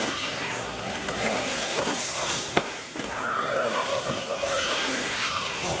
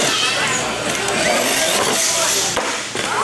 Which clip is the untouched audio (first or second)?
second